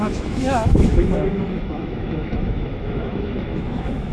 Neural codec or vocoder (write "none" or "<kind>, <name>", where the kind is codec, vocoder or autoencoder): autoencoder, DAC-VAE